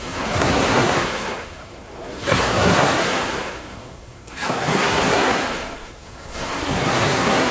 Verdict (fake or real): fake